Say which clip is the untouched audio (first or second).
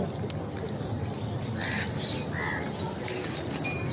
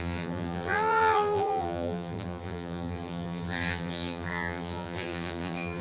first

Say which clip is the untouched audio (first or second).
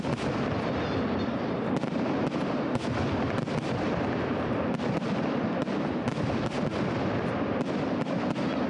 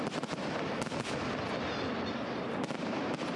second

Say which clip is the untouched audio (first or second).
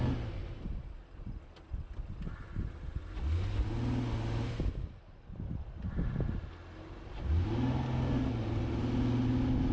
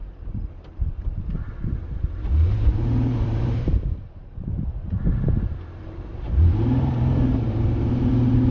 first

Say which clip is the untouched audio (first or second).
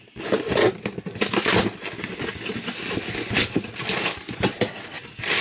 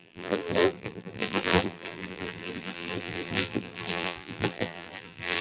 first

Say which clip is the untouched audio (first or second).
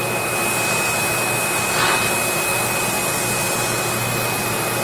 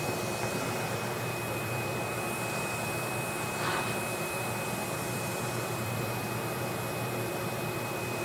first